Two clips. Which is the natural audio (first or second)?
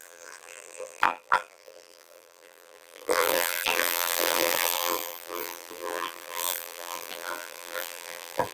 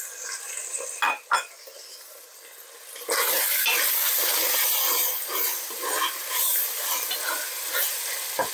second